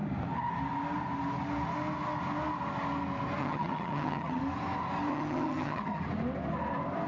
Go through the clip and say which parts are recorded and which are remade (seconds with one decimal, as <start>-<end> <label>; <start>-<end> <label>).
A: 0.0-3.4 recorded; 3.4-4.4 remade; 4.4-5.1 recorded; 5.1-6.0 remade; 6.0-7.1 recorded